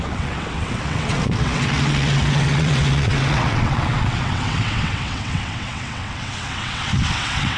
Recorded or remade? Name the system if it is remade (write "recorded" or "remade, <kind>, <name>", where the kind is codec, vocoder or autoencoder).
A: remade, vocoder, WaveNeXt